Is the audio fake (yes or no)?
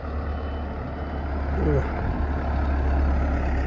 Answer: no